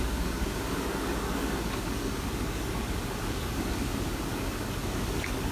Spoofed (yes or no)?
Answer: yes